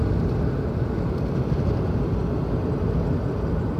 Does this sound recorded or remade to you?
recorded